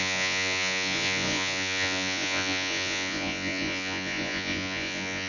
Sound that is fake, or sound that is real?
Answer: fake